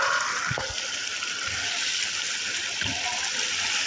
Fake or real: real